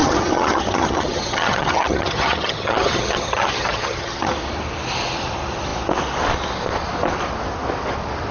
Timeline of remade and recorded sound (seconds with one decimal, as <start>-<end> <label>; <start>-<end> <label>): 0.0-4.3 remade; 4.3-8.3 recorded

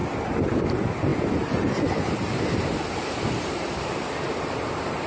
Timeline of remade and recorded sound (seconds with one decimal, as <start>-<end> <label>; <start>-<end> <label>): 0.0-5.1 recorded

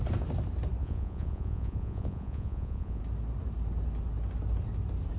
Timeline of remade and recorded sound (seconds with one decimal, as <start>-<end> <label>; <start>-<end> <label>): 0.0-0.8 recorded; 0.8-3.0 remade; 3.0-5.2 recorded

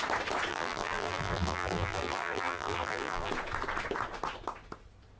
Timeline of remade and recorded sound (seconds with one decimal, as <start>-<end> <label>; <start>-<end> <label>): 0.0-0.5 recorded; 0.5-3.3 remade; 3.3-5.2 recorded